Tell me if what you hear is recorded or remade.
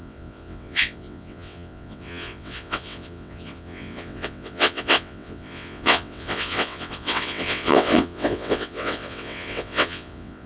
remade